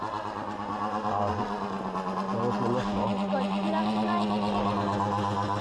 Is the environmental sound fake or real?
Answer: real